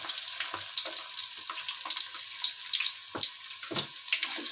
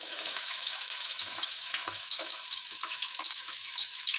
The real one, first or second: first